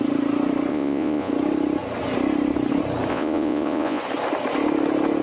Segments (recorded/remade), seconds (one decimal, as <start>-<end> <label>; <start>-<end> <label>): 0.0-0.7 recorded; 0.7-1.3 remade; 1.3-3.1 recorded; 3.1-4.0 remade; 4.0-5.2 recorded